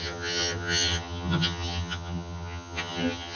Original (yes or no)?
no